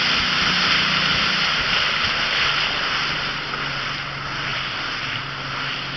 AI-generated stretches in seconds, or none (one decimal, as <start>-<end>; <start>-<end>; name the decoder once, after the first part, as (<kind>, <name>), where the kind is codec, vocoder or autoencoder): 4.5-5.2 (vocoder, BigVGAN v2)

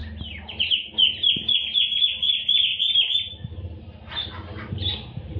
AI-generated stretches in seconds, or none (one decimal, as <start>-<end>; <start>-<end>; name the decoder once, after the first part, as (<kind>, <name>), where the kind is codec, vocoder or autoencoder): 2.3-2.7 (vocoder, BigVGAN v2); 4.7-5.4

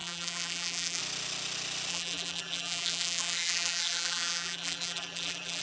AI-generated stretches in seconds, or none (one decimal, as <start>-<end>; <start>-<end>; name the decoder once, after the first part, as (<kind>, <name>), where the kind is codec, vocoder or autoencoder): 0.0-1.0 (vocoder, BigVGAN v2); 1.9-5.6

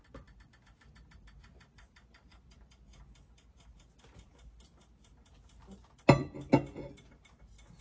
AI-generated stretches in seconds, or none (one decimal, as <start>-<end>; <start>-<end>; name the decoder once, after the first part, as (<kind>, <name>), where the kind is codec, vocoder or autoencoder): none

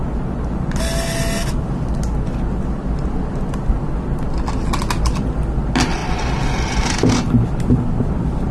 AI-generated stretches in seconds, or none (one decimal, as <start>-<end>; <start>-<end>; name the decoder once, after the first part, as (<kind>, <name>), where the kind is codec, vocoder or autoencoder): none

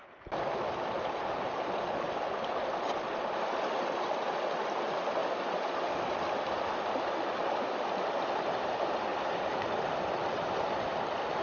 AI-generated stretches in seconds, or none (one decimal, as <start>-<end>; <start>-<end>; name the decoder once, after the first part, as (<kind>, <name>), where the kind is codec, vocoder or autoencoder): 2.8-5.2 (vocoder, BigVGAN v2); 8.1-11.4

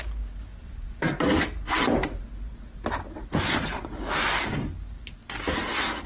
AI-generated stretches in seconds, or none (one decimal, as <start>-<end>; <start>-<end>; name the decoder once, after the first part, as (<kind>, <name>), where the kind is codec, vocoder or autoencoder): 0.5-4.2 (vocoder, BigVGAN v2)

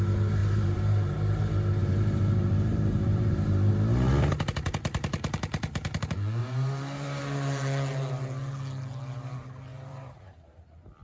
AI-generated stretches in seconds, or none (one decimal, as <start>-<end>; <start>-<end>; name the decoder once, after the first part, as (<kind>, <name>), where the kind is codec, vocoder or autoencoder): 0.4-1.4 (vocoder, BigVGAN v2); 1.8-3.7; 6.4-7.2; 9.7-10.6